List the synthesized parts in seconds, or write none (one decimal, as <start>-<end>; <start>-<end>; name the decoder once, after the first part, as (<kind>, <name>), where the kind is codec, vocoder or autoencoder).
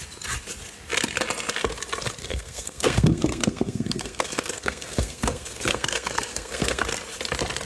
2.2-6.8 (codec, SNAC)